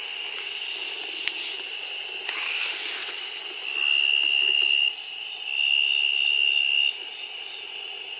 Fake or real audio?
real